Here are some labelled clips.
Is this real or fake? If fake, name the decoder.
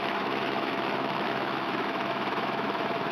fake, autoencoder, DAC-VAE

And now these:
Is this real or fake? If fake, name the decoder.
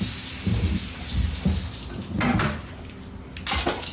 real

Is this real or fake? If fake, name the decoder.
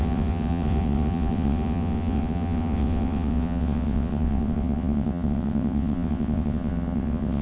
fake, vocoder, WaveNeXt